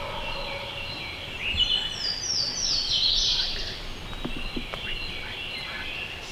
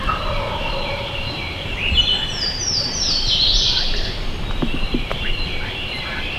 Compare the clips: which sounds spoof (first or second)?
second